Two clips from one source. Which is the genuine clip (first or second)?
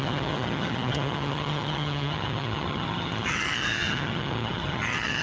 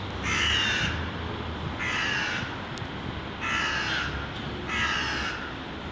second